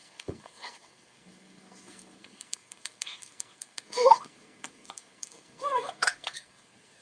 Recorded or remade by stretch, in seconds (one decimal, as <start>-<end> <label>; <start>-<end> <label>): 0.0-7.0 remade